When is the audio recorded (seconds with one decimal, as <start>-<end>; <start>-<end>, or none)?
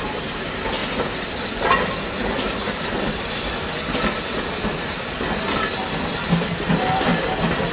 0.0-7.7